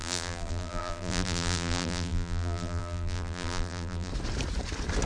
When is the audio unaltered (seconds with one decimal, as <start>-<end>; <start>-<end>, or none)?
4.1-5.1

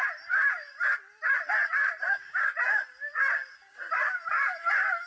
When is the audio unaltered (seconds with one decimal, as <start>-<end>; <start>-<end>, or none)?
0.0-1.7; 3.2-5.1

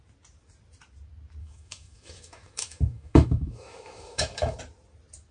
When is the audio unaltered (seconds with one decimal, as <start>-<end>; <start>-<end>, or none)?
0.0-1.4; 4.6-5.3